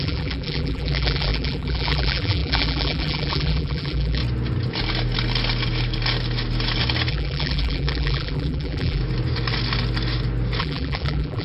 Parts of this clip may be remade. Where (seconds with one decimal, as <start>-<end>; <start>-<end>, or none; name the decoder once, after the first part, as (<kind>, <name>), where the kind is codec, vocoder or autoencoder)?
0.0-4.2 (vocoder, BigVGAN v2); 7.1-9.0; 10.6-11.4